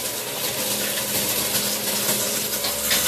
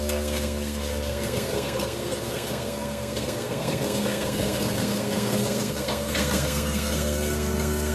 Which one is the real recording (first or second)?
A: first